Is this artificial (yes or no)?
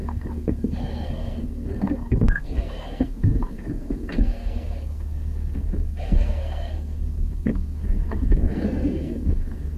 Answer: yes